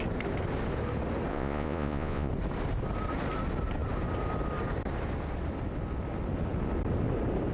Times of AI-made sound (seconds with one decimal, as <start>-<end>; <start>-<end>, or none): 1.3-2.3